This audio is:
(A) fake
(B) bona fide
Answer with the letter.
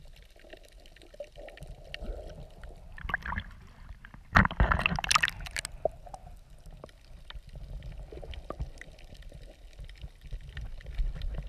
B